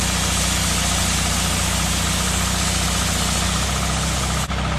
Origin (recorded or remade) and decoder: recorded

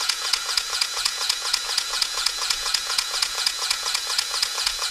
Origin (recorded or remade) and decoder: remade, vocoder, Vocos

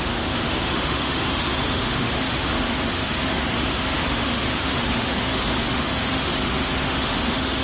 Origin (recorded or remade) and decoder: remade, autoencoder, DAC-VAE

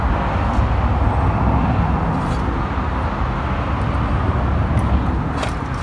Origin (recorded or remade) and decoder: recorded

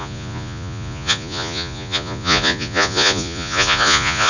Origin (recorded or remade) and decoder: remade, vocoder, Vocos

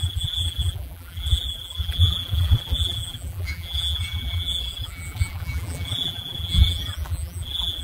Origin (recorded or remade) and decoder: remade, vocoder, BigVGAN v2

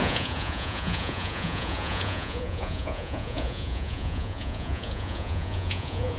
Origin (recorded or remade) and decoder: remade, vocoder, Vocos